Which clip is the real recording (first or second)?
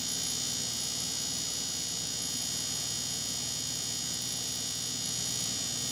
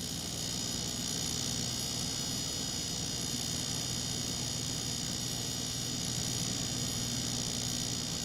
second